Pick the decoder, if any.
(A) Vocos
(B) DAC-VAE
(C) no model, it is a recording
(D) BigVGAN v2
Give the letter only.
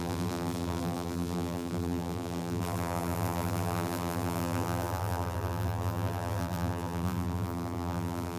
D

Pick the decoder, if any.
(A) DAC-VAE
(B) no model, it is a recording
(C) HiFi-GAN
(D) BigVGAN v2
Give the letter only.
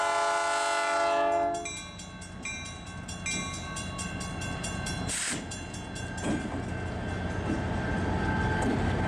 B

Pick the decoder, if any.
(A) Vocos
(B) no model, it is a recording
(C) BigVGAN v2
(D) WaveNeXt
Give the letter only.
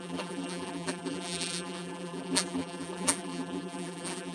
C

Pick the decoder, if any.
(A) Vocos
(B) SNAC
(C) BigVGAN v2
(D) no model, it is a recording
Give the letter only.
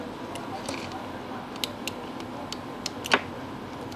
D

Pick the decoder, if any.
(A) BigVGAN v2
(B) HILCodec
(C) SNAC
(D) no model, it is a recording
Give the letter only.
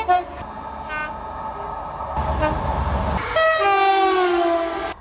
D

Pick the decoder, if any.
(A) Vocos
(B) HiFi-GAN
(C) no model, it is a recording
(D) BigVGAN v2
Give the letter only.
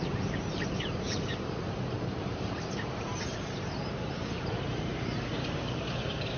D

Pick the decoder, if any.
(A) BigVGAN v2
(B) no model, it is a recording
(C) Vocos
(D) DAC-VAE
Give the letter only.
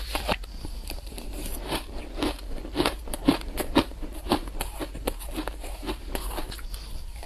A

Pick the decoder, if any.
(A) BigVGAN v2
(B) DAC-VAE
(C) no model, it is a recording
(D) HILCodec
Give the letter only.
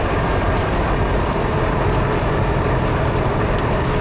A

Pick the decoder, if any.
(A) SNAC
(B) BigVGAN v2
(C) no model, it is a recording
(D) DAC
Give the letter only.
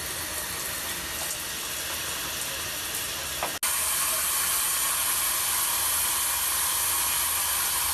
C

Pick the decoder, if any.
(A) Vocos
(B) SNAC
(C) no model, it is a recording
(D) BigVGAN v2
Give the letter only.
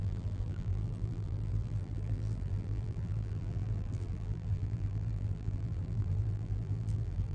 D